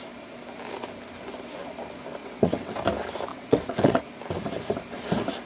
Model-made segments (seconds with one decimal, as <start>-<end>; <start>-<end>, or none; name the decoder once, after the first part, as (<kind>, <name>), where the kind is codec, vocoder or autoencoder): 2.2-2.7 (vocoder, WaveNeXt); 3.3-4.0